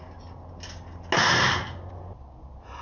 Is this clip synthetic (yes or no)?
no